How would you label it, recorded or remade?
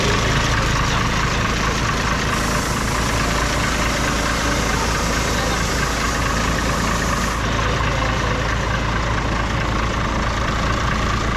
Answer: recorded